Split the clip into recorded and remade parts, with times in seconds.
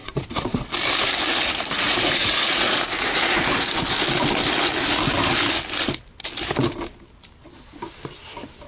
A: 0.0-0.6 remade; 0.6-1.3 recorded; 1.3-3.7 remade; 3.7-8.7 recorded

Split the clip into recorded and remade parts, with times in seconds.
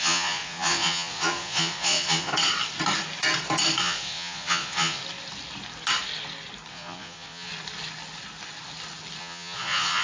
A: 0.0-2.3 remade; 2.3-3.8 recorded; 3.8-5.0 remade; 5.0-6.7 recorded; 6.7-7.5 remade; 7.5-9.2 recorded; 9.2-10.0 remade